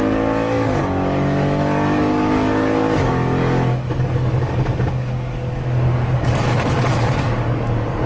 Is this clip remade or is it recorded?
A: remade